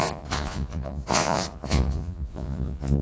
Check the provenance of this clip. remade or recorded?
remade